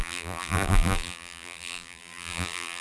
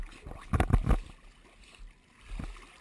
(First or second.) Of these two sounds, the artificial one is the first